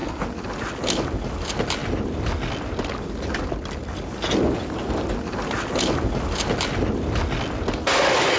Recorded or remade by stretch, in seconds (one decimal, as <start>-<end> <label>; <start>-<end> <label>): 0.0-8.4 recorded